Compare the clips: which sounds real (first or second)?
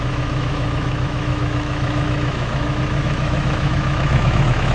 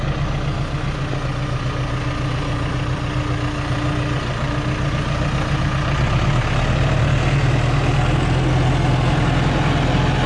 second